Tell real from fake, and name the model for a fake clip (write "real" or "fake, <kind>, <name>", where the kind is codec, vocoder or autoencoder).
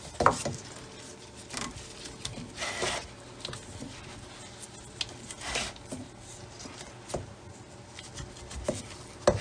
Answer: real